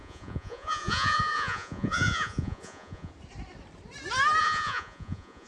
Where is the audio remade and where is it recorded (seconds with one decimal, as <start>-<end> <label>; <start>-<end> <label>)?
0.0-3.1 remade; 3.1-4.4 recorded; 4.4-5.5 remade